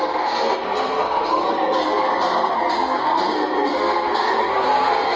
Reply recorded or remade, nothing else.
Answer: remade